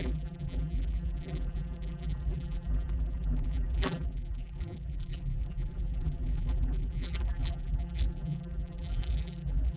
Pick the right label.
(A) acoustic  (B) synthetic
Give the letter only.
B